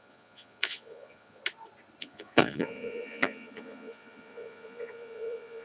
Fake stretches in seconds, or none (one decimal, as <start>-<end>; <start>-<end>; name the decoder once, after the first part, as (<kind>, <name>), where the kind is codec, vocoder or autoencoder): 0.0-1.4 (vocoder, Vocos); 2.0-5.6